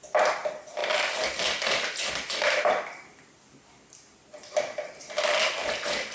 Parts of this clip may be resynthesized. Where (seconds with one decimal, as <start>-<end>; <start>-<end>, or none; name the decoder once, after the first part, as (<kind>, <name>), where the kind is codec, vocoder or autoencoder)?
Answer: 0.8-3.9 (vocoder, BigVGAN v2)